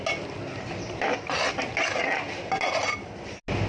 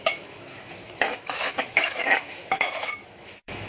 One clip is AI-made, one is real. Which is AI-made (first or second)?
second